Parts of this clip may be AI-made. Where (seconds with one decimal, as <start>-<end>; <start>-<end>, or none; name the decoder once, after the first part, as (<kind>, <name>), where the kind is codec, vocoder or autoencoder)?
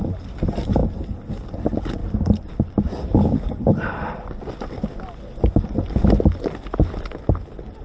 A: none